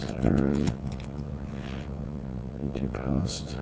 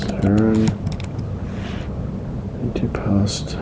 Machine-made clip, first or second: first